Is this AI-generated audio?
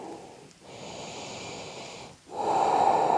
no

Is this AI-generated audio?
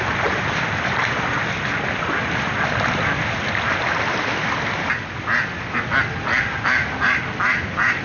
no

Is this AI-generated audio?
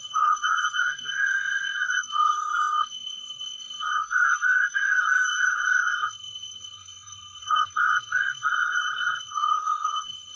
yes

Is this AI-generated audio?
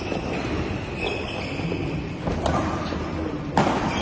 no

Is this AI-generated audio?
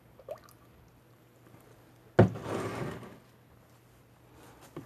no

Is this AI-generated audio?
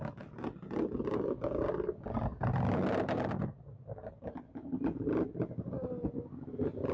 no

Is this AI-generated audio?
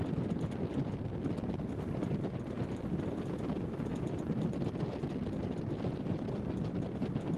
no